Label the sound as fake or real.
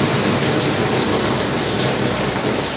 real